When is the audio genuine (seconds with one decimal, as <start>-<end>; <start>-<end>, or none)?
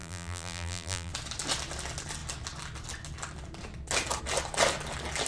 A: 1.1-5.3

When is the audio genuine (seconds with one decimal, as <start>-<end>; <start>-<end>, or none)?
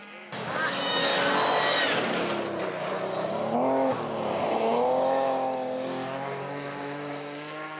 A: 1.1-3.3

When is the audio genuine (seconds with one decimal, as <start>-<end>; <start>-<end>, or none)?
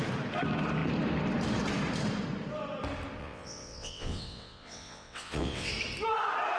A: 0.0-3.2; 5.7-6.6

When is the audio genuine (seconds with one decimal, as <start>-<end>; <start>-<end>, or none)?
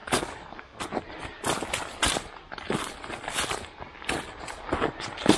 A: 0.8-5.4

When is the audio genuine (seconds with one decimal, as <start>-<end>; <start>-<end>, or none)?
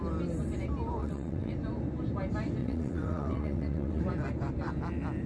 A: 0.0-1.0; 1.5-2.6; 4.0-5.3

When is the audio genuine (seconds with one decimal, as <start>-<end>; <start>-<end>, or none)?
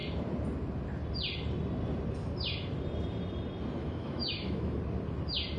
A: 0.0-3.8; 4.8-5.6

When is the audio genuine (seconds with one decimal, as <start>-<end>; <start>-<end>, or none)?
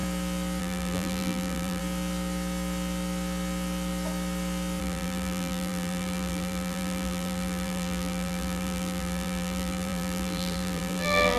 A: 0.0-0.6; 1.8-4.8